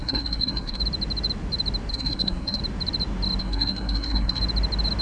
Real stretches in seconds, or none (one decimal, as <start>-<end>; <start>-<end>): 0.8-1.9; 2.6-3.4; 4.4-5.0